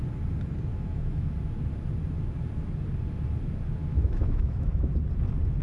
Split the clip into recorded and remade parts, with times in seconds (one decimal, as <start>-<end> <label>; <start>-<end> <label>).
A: 0.0-0.7 recorded; 0.7-1.3 remade; 1.3-3.9 recorded; 3.9-4.9 remade; 4.9-5.6 recorded